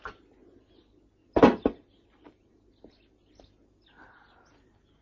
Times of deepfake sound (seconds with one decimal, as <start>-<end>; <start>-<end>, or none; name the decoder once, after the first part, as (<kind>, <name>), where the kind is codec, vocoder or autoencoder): 1.2-2.6 (vocoder, BigVGAN v2)